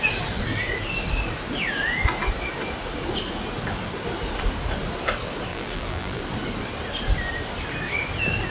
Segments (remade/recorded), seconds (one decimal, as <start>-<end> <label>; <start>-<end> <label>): 0.0-5.5 recorded; 5.5-6.2 remade; 6.2-8.5 recorded